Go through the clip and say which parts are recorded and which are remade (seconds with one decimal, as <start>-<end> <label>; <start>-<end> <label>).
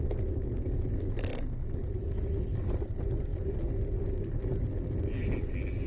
0.0-5.9 recorded